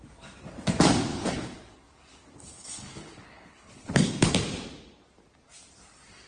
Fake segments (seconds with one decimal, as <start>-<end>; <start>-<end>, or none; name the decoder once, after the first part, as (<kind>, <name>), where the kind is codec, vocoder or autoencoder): 1.1-4.3 (codec, HILCodec)